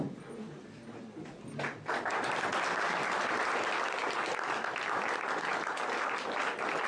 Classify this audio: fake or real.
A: real